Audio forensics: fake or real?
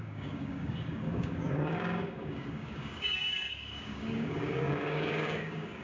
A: fake